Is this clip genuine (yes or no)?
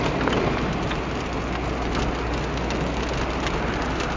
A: yes